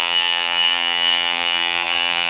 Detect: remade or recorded remade